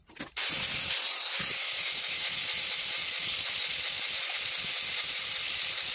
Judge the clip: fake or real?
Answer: real